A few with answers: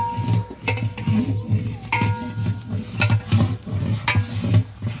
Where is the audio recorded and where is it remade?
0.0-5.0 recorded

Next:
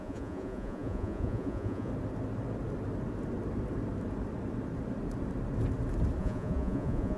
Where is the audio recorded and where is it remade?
0.0-1.9 remade; 1.9-6.2 recorded; 6.2-7.2 remade

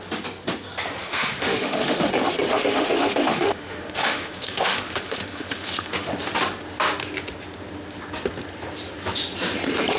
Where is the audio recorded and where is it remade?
0.0-1.1 recorded; 1.1-2.1 remade; 2.1-2.5 recorded; 2.5-6.1 remade; 6.1-10.0 recorded

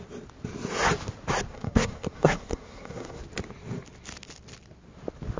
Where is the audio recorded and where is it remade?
0.0-1.5 recorded; 1.5-3.2 remade; 3.2-5.4 recorded